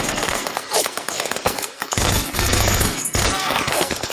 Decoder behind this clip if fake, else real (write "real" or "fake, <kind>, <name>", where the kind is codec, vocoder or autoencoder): fake, codec, SNAC